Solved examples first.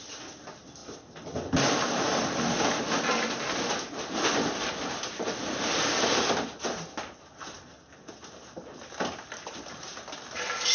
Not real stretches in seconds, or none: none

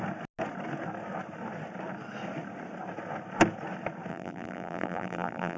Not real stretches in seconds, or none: 4.1-5.6 (vocoder, BigVGAN v2)

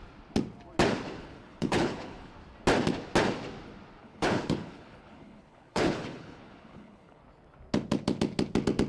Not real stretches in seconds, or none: 1.2-2.3 (codec, HILCodec); 4.0-7.2

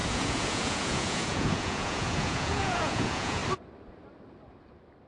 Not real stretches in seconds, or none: 0.0-3.4 (vocoder, Vocos)